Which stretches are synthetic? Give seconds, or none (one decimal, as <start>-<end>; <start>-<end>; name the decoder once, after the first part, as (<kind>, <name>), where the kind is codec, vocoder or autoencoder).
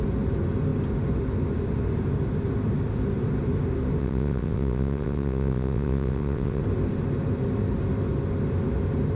4.0-6.6 (vocoder, WaveNeXt)